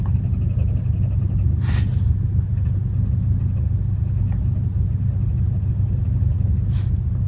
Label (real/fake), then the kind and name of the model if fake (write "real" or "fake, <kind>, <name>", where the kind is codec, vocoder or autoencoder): real